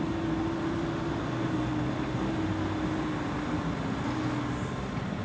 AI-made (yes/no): no